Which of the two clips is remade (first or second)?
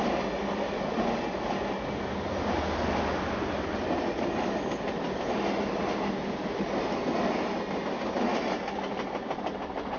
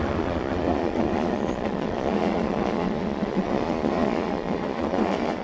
second